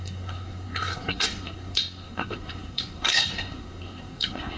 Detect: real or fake fake